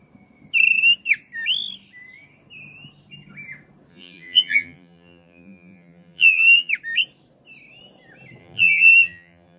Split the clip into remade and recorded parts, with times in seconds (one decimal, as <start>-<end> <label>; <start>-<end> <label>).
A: 0.0-3.9 recorded; 3.9-6.7 remade; 6.7-8.4 recorded; 8.4-9.6 remade